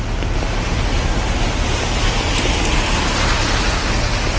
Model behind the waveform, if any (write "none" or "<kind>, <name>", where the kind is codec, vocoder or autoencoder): none